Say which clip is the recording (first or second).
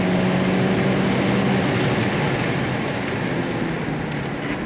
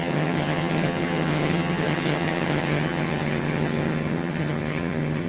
first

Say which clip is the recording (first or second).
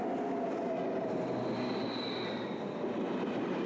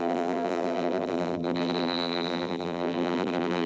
first